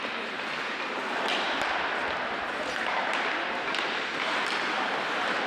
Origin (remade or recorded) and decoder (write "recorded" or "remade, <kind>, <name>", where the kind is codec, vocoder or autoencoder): recorded